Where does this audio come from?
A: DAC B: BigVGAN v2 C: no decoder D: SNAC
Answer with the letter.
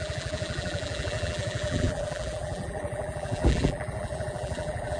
B